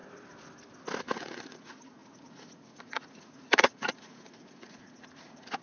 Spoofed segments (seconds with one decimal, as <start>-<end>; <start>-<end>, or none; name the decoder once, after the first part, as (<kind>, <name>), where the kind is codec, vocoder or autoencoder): 1.0-5.6 (vocoder, Vocos)